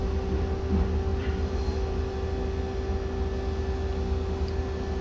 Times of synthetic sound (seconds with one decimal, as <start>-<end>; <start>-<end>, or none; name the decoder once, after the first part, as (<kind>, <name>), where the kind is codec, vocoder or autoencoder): 1.1-1.6 (vocoder, BigVGAN v2)